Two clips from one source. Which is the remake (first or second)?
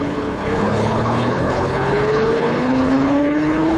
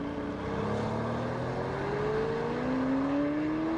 first